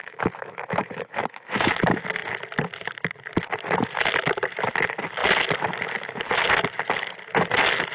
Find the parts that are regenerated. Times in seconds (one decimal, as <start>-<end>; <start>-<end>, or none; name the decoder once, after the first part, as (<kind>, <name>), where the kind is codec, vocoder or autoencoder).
0.0-1.7 (autoencoder, DAC-VAE)